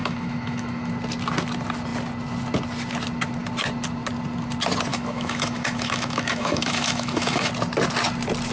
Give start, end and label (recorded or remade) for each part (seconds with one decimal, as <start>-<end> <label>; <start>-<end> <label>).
0.0-0.9 remade; 0.9-4.9 recorded; 4.9-7.5 remade; 7.5-8.5 recorded